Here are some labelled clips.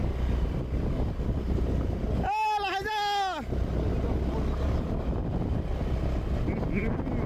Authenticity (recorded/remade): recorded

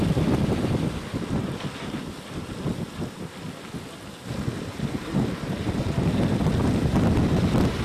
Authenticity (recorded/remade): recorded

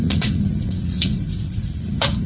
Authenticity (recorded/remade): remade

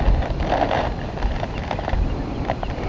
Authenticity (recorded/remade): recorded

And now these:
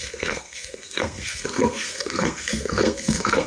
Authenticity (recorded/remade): remade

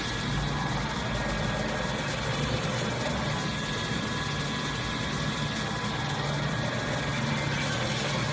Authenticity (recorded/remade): recorded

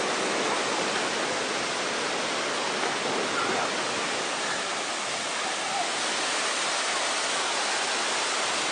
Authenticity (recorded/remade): recorded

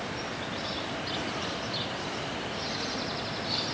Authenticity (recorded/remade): recorded